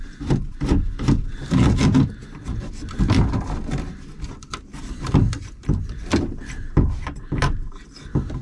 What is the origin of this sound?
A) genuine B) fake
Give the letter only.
A